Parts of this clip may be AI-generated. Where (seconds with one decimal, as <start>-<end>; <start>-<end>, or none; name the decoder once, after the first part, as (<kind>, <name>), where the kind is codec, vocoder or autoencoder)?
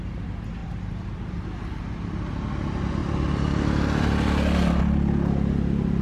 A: 0.6-2.5 (vocoder, BigVGAN v2); 3.0-4.8